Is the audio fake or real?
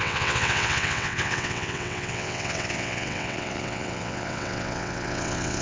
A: fake